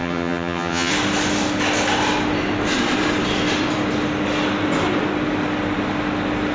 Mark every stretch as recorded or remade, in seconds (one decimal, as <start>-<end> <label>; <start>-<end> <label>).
0.0-0.9 remade; 0.9-6.5 recorded